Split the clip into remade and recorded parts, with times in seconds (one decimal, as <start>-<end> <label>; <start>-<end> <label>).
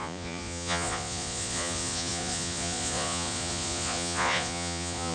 0.0-5.1 remade